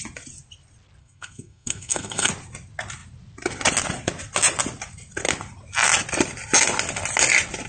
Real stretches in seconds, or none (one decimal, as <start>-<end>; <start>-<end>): 0.0-1.0; 2.3-7.7